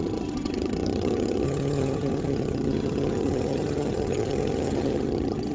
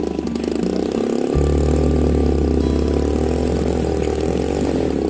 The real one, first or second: second